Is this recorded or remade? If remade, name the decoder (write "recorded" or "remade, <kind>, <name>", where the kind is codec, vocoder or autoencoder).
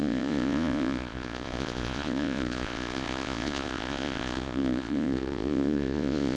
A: remade, vocoder, Vocos